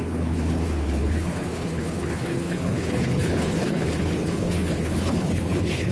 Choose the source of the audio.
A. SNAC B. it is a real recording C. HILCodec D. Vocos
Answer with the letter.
C